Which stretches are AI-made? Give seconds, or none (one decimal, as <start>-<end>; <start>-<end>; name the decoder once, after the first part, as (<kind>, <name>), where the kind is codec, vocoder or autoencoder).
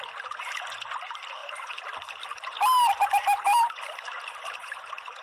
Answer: none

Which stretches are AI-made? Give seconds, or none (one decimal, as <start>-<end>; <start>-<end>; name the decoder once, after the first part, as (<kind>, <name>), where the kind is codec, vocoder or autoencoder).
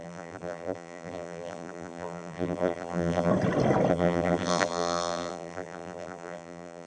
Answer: 0.0-3.3 (vocoder, BigVGAN v2); 3.9-6.9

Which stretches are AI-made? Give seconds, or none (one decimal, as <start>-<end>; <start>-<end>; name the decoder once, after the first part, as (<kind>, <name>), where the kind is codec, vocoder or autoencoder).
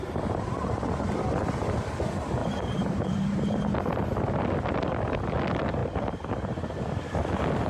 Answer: 2.4-3.6 (vocoder, BigVGAN v2); 5.8-6.8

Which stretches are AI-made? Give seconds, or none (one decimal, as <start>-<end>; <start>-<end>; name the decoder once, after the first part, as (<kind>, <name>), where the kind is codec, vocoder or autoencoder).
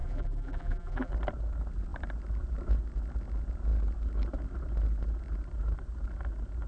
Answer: 0.0-1.1 (vocoder, BigVGAN v2)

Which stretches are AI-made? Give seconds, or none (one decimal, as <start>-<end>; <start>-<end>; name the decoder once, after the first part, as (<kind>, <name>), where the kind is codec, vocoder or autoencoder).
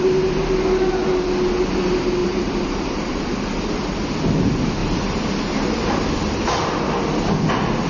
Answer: 2.2-4.2 (vocoder, BigVGAN v2); 4.8-5.4; 6.2-6.8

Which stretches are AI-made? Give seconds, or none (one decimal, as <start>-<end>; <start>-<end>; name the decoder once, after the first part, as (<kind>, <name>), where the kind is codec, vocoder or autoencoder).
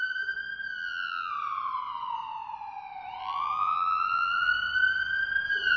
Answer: 0.8-1.3 (vocoder, BigVGAN v2); 3.2-4.5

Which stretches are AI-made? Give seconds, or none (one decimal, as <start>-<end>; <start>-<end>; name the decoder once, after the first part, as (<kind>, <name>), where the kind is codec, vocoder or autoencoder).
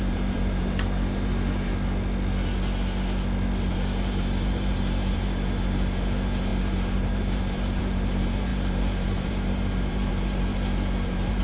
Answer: 0.0-1.7 (vocoder, BigVGAN v2); 3.7-11.4